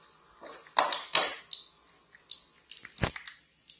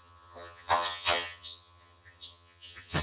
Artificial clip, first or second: second